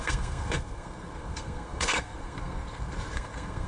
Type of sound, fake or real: fake